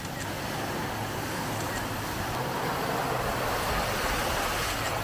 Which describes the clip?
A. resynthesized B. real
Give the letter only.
B